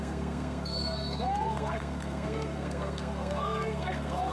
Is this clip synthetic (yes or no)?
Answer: yes